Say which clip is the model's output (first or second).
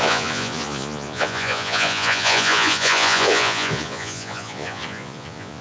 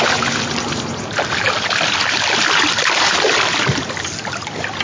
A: first